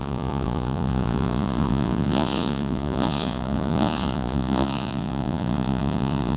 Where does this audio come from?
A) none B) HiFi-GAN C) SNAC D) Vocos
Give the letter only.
D